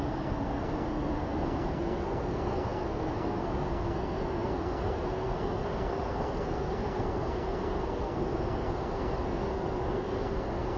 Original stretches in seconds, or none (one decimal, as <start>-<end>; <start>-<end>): none